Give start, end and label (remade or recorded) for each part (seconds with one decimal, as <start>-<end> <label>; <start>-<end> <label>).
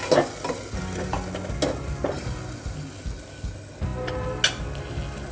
0.0-5.3 recorded